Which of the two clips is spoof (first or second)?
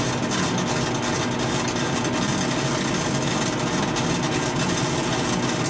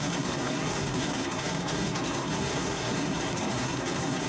second